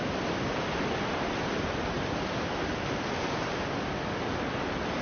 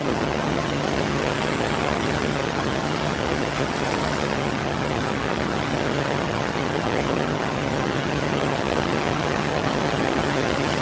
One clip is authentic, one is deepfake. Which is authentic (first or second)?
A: first